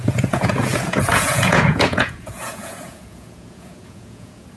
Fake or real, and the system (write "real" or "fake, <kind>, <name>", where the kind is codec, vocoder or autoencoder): fake, vocoder, Vocos